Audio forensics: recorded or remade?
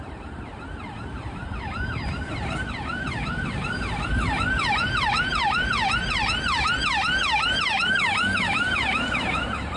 remade